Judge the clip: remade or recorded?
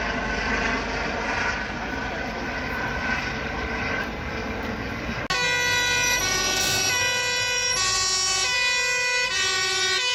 recorded